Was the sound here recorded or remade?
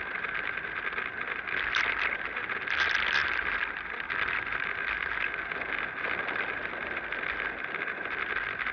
recorded